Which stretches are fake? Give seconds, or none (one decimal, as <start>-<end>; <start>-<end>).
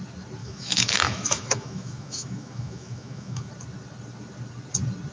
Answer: 0.4-3.5